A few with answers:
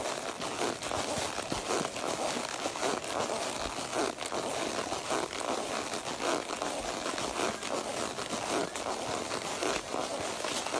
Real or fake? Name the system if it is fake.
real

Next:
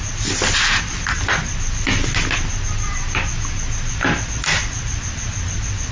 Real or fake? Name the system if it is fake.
real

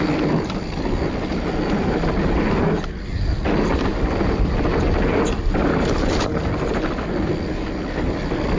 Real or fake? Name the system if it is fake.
real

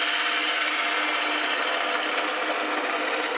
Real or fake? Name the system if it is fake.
real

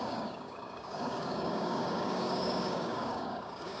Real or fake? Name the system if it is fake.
fake, codec, DAC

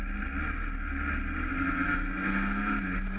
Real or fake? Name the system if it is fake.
real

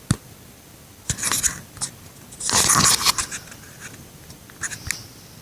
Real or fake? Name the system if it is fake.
real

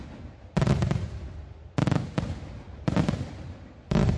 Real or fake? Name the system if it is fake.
real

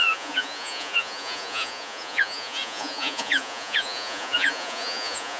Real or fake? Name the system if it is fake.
fake, vocoder, Vocos